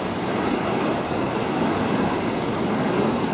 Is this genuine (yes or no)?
no